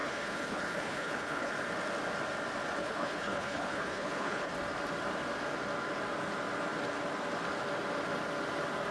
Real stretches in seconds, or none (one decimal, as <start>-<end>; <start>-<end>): 1.5-2.8; 4.5-8.9